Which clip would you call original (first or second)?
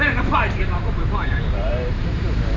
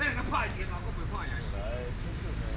second